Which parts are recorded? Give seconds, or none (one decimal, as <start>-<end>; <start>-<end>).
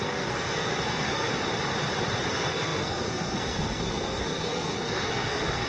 1.3-2.3